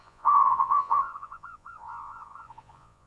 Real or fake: fake